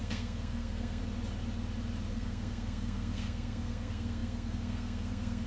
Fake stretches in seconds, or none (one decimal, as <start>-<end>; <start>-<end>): 0.0-1.0; 2.1-5.5